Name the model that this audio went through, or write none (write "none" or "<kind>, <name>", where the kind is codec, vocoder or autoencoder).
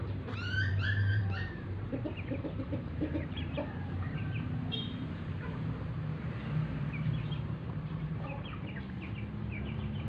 vocoder, BigVGAN v2